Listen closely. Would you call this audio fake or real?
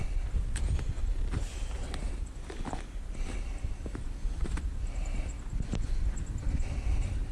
real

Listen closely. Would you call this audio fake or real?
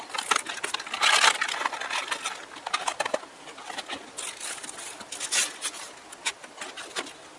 real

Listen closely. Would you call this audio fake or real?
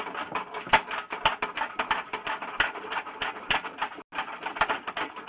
real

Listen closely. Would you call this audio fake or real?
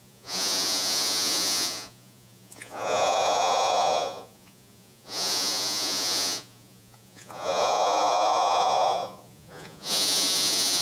fake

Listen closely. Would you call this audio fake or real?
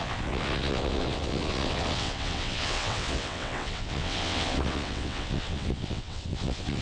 fake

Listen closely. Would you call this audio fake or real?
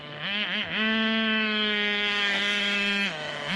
fake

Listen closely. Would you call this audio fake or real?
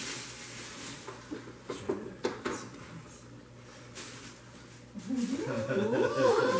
real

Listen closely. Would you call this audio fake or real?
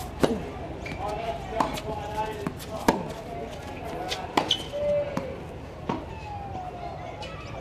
real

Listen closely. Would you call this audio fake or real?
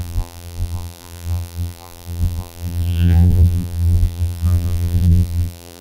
fake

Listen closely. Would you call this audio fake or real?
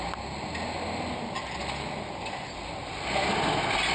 real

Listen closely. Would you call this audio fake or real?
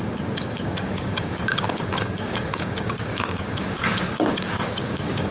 fake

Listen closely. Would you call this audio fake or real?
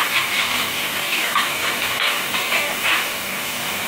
fake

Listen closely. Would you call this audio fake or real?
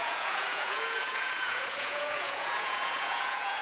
fake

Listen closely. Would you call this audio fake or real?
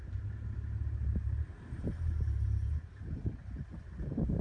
real